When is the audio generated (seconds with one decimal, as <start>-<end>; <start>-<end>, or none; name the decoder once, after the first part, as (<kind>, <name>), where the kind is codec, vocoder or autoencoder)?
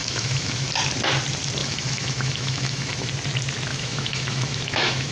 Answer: 0.0-0.7 (autoencoder, DAC-VAE); 1.6-3.1; 3.7-5.1